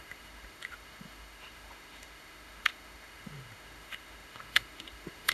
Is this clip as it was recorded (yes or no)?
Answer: no